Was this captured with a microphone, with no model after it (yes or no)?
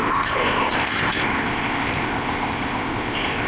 no